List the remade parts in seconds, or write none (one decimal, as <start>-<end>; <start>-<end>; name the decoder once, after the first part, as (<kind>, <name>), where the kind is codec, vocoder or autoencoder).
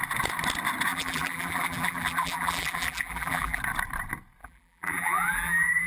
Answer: 0.9-3.6 (vocoder, BigVGAN v2); 4.4-5.9